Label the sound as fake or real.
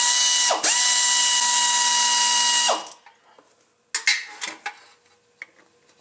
real